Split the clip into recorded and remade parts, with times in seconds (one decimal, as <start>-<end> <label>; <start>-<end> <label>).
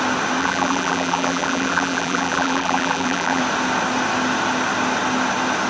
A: 0.0-0.4 recorded; 0.4-3.4 remade; 3.4-5.7 recorded